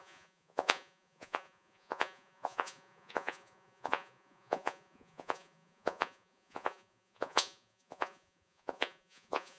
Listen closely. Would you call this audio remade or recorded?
remade